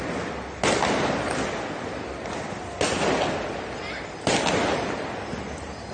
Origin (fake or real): real